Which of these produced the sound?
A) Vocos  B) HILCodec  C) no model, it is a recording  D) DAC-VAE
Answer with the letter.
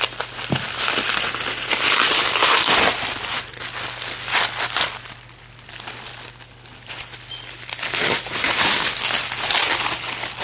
C